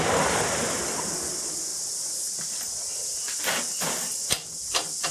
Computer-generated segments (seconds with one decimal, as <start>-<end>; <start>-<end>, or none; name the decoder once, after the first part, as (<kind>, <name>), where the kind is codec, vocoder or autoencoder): 1.7-5.1 (vocoder, BigVGAN v2)